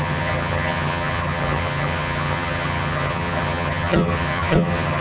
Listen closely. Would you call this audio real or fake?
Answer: fake